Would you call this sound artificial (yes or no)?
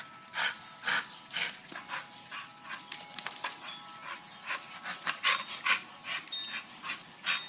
no